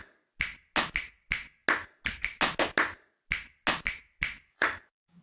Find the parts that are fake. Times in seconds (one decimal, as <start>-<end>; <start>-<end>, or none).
4.5-5.2